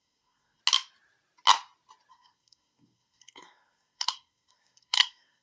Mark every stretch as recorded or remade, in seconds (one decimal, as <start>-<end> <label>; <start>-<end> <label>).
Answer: 0.0-0.6 remade; 0.6-2.1 recorded; 2.1-5.4 remade